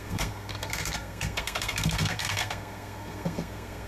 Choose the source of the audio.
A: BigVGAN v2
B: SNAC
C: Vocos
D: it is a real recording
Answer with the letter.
B